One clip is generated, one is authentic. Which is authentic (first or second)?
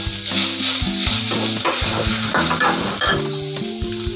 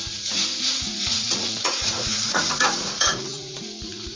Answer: first